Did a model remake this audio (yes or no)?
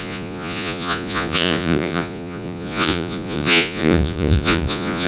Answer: yes